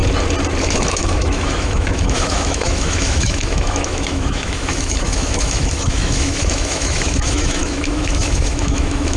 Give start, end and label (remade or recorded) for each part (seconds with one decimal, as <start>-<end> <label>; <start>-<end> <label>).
0.0-0.6 recorded; 0.6-9.2 remade